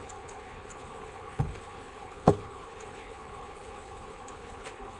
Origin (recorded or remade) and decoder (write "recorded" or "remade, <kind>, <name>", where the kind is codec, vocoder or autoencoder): remade, codec, HILCodec